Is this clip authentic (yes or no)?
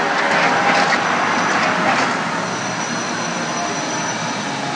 yes